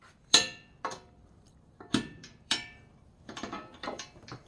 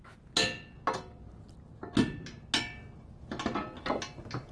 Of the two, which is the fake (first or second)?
first